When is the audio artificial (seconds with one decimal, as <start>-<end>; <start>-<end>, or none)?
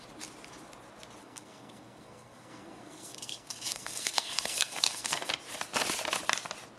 1.2-5.3